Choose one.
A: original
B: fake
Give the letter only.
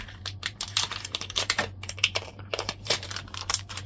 B